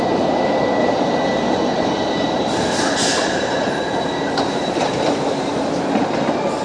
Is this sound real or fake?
fake